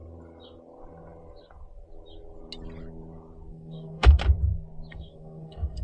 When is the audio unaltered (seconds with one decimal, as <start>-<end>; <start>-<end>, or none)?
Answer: 0.0-3.5; 4.2-4.9